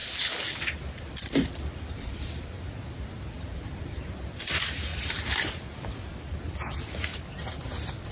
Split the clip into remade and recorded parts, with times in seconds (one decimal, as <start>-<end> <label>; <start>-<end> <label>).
0.0-2.7 remade; 2.7-3.5 recorded; 3.5-4.4 remade; 4.4-4.9 recorded; 4.9-5.9 remade; 5.9-7.1 recorded; 7.1-8.1 remade